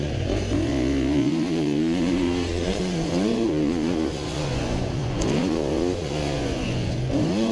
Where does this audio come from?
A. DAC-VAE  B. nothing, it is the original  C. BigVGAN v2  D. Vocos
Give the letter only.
D